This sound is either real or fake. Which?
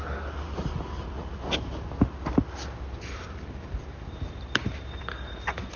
real